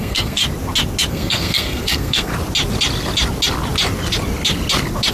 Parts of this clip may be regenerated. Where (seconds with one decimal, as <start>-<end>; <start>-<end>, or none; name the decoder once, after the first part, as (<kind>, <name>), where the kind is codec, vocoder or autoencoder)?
0.0-0.4 (codec, SNAC); 1.1-2.3